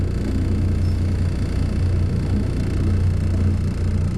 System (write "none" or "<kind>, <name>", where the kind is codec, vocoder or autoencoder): none